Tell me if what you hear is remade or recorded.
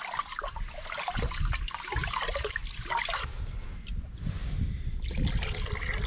recorded